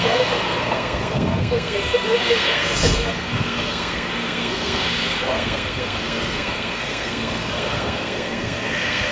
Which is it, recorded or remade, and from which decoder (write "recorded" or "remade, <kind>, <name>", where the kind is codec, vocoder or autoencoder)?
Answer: remade, codec, SNAC